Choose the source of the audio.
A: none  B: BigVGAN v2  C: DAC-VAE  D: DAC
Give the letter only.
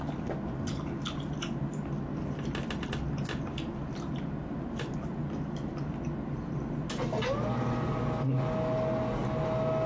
A